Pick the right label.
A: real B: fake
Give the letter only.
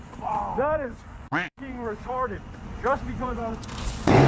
B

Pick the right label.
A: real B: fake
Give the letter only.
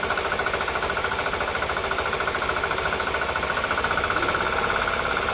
A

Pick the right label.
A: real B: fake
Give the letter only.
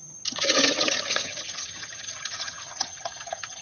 B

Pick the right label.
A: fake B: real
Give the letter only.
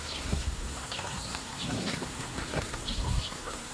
A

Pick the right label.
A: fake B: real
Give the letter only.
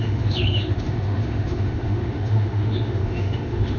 A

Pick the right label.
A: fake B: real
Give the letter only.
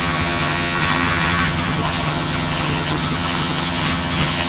A